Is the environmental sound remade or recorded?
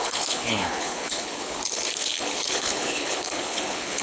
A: remade